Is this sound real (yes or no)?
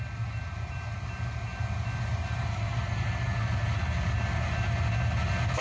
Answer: yes